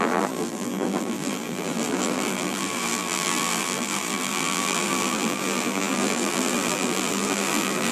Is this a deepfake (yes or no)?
yes